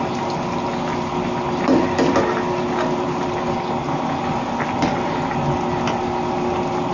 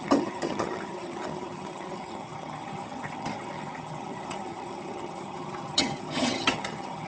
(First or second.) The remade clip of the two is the second